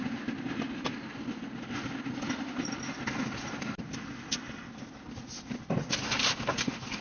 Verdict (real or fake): real